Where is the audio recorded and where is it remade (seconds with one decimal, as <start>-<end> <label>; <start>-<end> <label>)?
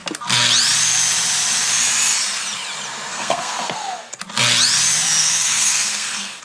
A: 0.0-3.1 recorded; 3.1-4.2 remade; 4.2-5.2 recorded; 5.2-6.4 remade